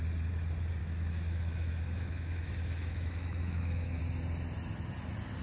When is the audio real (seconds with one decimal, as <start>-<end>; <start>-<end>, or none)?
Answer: 0.0-0.8; 4.0-5.4